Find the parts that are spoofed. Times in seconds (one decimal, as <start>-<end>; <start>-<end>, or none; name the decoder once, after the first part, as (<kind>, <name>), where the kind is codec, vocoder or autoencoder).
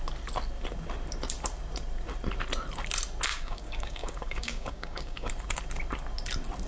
3.3-5.3 (codec, DAC)